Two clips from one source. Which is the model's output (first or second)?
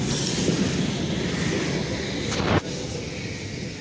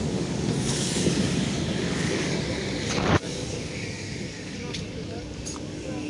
second